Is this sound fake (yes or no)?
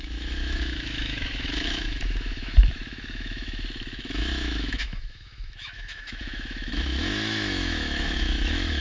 yes